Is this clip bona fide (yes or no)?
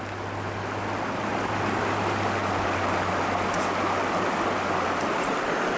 yes